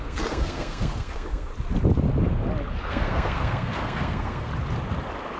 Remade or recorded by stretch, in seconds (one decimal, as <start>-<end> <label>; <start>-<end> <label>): 0.0-1.5 remade; 1.5-2.9 recorded; 2.9-4.5 remade; 4.5-5.4 recorded